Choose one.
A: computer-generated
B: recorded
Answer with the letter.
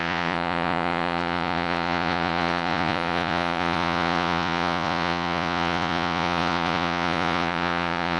A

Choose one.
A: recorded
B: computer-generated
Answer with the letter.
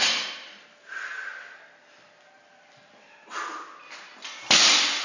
A